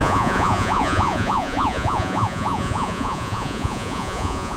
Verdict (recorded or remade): remade